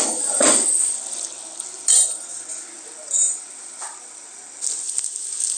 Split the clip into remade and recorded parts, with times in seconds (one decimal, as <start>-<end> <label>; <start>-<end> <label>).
0.0-5.6 recorded